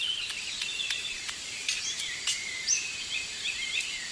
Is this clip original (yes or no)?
no